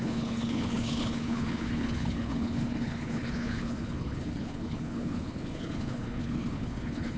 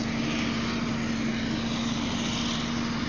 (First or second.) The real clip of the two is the second